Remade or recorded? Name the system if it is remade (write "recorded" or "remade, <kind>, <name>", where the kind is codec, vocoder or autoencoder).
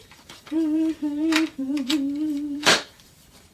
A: remade, vocoder, BigVGAN v2